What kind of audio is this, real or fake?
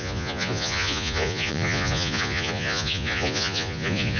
fake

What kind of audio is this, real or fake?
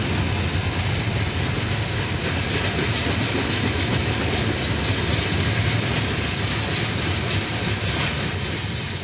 real